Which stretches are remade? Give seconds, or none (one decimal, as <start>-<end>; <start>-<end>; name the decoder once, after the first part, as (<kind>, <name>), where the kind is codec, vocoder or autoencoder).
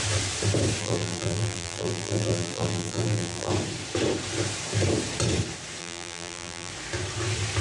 0.8-3.5 (vocoder, BigVGAN v2); 5.8-6.7